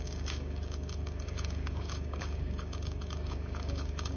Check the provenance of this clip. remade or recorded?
remade